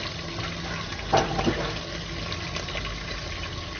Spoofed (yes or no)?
no